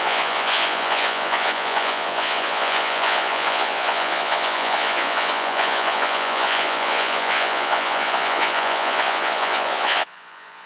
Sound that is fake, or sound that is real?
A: fake